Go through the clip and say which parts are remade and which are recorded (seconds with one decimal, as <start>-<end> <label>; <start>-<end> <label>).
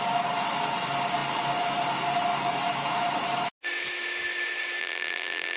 0.0-4.8 recorded; 4.8-5.6 remade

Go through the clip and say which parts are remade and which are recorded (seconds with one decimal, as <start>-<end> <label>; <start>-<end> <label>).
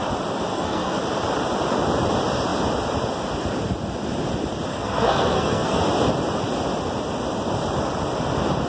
0.0-0.5 recorded; 0.5-1.0 remade; 1.0-4.7 recorded; 4.7-5.8 remade; 5.8-8.7 recorded